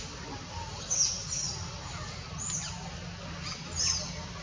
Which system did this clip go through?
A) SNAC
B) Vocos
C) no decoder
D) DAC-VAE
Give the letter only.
C